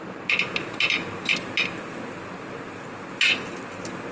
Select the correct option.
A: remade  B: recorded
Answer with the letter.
B